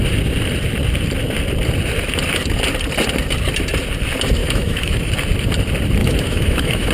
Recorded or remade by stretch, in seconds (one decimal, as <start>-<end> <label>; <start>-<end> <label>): 0.0-4.4 recorded; 4.4-5.1 remade; 5.1-6.0 recorded; 6.0-6.9 remade